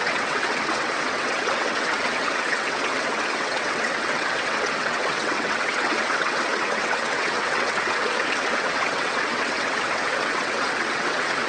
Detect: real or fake fake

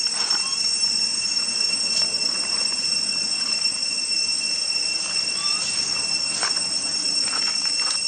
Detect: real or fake real